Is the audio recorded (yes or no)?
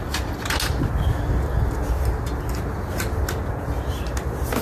yes